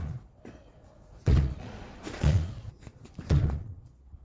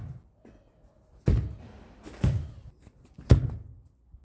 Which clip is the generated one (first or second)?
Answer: first